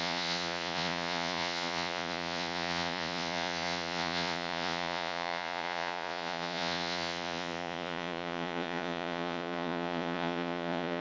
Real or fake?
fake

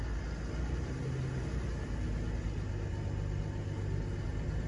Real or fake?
real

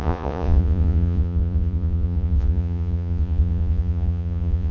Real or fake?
fake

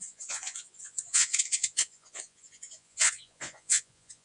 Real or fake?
fake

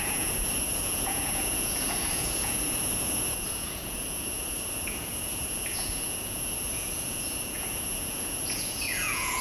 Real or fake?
fake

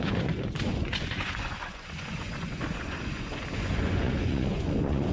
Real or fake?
fake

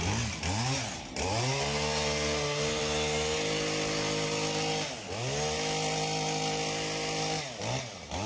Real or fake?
real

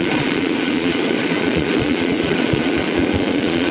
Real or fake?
fake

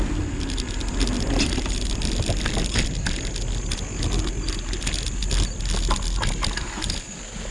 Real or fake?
real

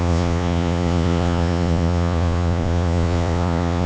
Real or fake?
fake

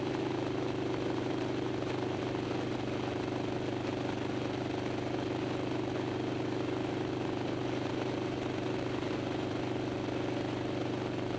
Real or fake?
real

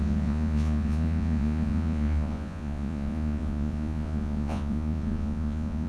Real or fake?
fake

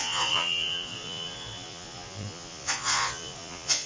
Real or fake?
fake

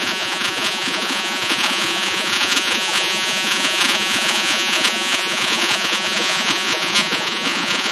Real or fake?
fake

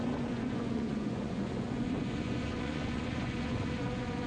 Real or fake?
fake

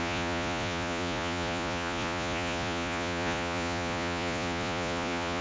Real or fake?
fake